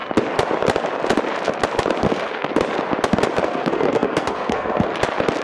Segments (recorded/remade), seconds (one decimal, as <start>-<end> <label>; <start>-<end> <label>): 0.0-2.0 recorded; 2.0-2.5 remade; 2.5-3.4 recorded; 3.4-4.9 remade; 4.9-5.4 recorded